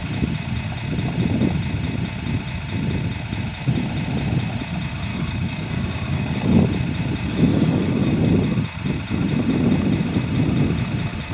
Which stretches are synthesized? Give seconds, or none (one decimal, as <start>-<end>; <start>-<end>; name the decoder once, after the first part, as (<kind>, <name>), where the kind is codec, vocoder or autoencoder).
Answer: 5.1-6.5 (codec, DAC); 7.5-8.3